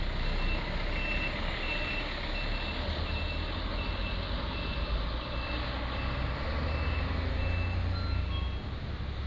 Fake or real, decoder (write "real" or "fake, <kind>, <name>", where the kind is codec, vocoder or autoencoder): real